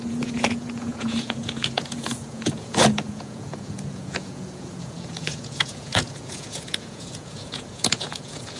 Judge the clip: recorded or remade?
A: remade